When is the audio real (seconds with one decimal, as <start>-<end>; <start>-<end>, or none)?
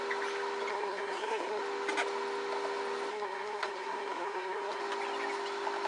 0.0-0.7; 1.6-3.1; 4.8-5.9